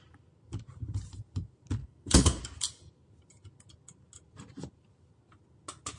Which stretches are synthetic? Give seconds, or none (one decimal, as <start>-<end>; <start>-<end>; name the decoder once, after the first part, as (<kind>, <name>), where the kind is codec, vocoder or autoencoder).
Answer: 1.8-2.4 (codec, SNAC)